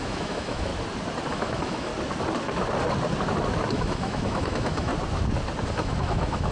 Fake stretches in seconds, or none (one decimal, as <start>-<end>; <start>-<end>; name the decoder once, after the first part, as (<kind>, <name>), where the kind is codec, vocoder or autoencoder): 0.0-0.7 (autoencoder, DAC-VAE); 1.3-1.9; 3.7-4.9; 5.7-6.5